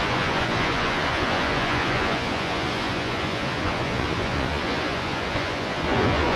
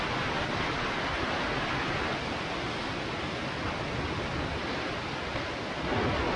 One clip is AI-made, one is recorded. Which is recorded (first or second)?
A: second